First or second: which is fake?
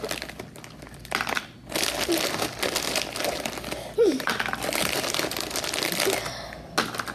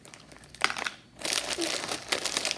second